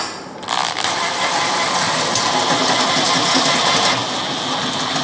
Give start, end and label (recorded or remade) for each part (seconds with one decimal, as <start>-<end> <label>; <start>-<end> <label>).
0.0-5.0 recorded

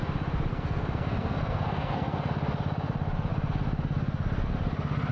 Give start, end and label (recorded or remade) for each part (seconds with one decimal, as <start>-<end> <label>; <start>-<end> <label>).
0.0-0.5 recorded; 0.5-2.3 remade; 2.3-5.1 recorded